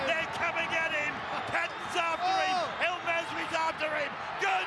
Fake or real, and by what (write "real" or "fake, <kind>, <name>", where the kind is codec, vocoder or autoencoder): real